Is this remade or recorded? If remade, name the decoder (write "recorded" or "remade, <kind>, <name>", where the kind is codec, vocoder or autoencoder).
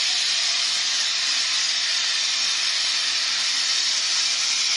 remade, vocoder, BigVGAN v2